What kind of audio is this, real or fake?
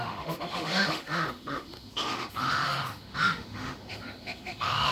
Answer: fake